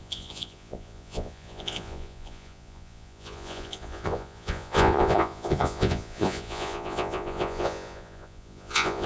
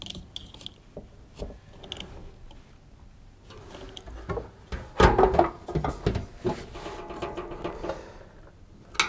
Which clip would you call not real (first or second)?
first